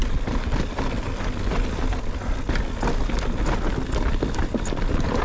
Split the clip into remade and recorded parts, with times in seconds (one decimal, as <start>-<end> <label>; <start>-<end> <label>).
0.0-5.2 recorded